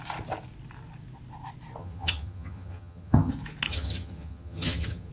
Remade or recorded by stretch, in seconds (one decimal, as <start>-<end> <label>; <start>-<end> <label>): 0.0-1.8 recorded; 1.8-3.3 remade; 3.3-3.7 recorded; 3.7-5.1 remade